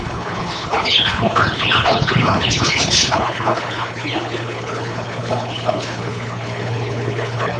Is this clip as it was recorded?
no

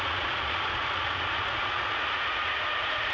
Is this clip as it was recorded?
no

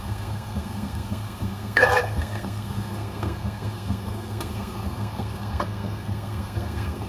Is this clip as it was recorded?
no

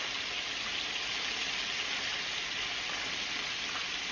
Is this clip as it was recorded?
yes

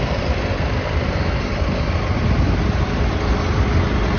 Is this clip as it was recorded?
yes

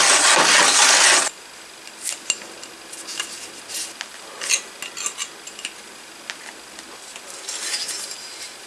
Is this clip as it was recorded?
yes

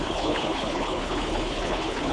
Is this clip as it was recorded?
no